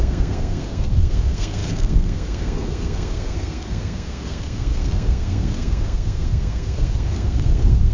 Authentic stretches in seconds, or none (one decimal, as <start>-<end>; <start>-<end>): none